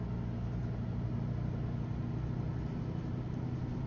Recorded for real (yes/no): yes